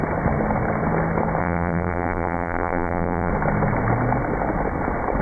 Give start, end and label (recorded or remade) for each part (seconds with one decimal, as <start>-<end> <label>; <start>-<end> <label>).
0.0-1.4 recorded; 1.4-3.3 remade; 3.3-5.2 recorded